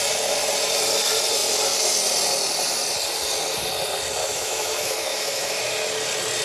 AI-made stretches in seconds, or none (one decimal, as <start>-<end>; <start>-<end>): 4.2-5.6